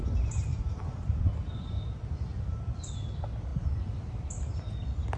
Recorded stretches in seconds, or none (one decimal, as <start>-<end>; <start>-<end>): 0.0-0.5; 1.2-2.3; 2.9-3.5; 4.6-5.2